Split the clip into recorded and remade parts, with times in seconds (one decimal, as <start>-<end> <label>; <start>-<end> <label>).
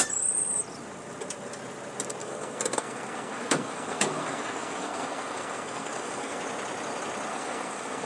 0.0-2.2 recorded; 2.2-6.4 remade; 6.4-7.3 recorded; 7.3-8.1 remade